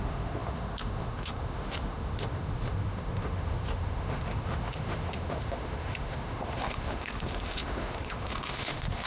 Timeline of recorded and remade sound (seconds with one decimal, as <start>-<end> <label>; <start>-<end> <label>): 0.0-9.1 remade